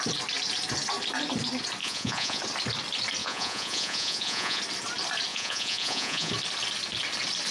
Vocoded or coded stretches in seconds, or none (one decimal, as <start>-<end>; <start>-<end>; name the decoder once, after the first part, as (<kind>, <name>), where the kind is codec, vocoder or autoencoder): 1.8-2.4 (vocoder, Vocos); 3.2-4.6; 5.3-6.3